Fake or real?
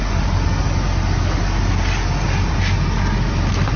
real